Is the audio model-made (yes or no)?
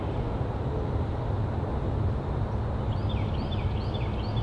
no